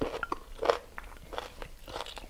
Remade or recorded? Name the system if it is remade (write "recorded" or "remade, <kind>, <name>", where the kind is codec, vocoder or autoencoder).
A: recorded